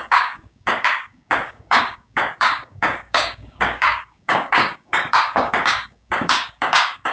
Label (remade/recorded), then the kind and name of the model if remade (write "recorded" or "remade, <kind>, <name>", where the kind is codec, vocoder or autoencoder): remade, codec, DAC